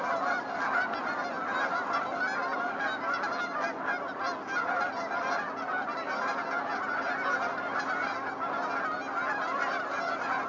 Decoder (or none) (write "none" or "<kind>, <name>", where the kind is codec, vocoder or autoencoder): none